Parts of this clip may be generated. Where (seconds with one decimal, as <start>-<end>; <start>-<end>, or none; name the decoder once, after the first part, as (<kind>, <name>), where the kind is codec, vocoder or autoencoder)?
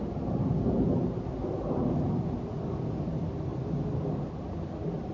none